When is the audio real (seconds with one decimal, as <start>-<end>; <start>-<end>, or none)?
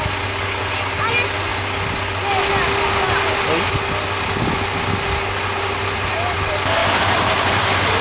0.0-6.8